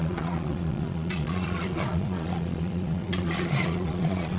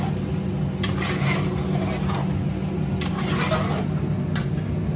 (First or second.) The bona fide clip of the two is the second